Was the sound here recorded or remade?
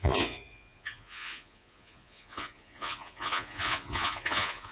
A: remade